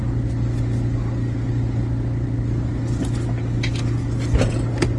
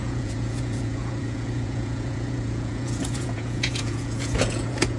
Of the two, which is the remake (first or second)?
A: second